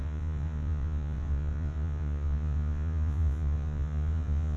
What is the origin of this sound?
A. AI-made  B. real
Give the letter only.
A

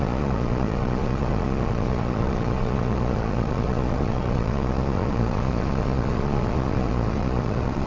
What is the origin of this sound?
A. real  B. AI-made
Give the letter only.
B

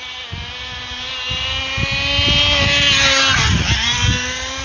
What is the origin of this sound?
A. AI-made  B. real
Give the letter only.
B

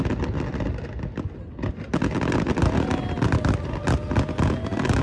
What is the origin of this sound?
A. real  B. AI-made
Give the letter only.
A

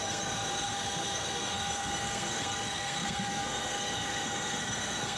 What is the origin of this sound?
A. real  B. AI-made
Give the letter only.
B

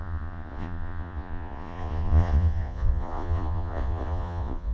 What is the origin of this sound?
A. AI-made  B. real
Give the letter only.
A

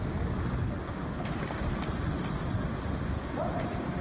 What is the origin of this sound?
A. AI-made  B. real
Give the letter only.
B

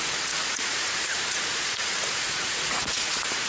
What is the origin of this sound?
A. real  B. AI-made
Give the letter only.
B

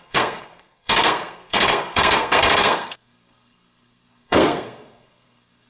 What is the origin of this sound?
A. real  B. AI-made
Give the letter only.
B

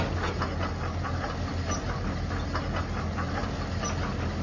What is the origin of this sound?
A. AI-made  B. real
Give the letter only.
B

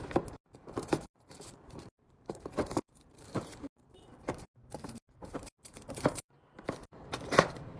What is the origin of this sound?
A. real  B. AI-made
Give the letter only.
B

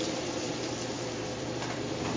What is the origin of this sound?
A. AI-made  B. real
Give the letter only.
A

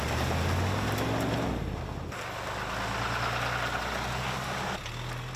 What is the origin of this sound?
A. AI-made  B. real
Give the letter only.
B